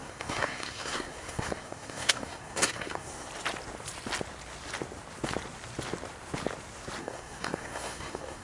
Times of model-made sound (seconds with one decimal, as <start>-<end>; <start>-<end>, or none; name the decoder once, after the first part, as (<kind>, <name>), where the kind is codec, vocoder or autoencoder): 0.0-3.3 (codec, SNAC); 7.0-8.4